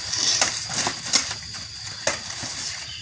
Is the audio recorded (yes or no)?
yes